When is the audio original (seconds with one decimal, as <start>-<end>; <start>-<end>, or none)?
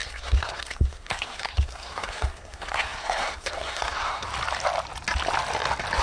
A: 4.3-6.0